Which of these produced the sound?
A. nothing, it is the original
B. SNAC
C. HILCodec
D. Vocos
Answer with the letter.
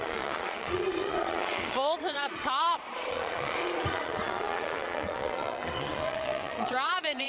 D